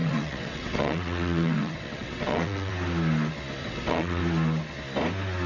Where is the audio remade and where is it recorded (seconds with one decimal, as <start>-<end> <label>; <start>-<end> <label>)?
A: 0.0-2.7 remade; 2.7-3.6 recorded; 3.6-4.2 remade; 4.2-5.5 recorded